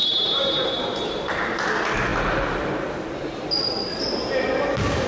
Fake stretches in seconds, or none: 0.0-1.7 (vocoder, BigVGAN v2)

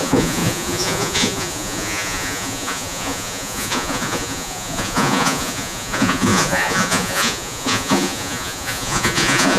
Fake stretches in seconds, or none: 0.0-9.6 (vocoder, Vocos)

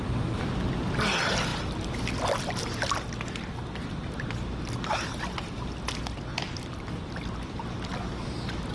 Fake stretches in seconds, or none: none

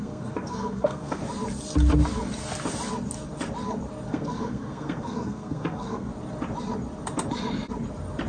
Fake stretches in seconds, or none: 0.0-1.2 (codec, SNAC); 4.1-6.1